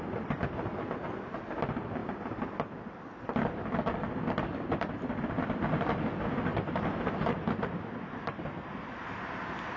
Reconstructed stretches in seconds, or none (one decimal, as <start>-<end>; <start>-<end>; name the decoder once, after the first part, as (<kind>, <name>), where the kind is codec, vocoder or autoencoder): 6.5-8.9 (vocoder, BigVGAN v2)